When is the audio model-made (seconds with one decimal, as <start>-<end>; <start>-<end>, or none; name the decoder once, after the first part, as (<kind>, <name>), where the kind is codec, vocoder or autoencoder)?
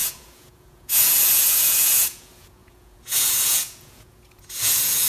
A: 0.0-5.1 (vocoder, Vocos)